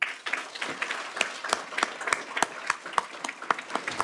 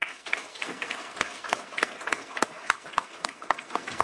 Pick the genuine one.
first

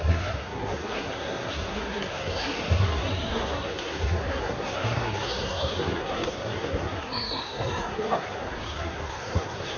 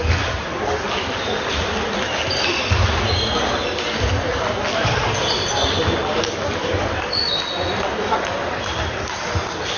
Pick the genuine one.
second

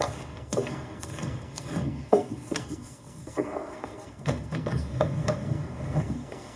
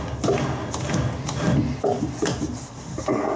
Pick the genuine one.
second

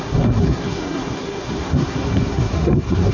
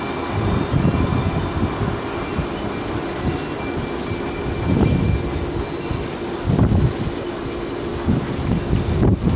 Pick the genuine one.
second